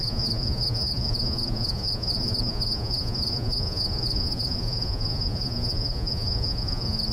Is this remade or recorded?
remade